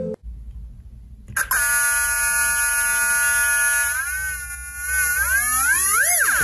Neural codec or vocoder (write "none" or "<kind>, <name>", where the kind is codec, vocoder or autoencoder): none